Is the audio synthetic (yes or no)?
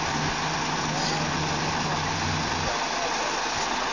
no